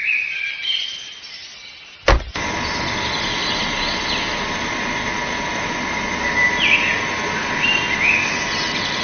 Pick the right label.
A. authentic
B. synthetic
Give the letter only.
A